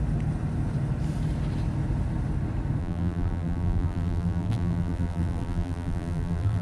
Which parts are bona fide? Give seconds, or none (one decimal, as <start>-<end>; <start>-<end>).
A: 0.0-2.8